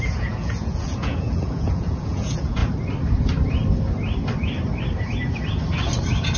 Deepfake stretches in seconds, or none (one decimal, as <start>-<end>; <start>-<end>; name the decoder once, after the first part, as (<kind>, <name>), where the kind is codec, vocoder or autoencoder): 0.0-2.6 (vocoder, Vocos)